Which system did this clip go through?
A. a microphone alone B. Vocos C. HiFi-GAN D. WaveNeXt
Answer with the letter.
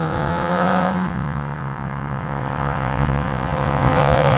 D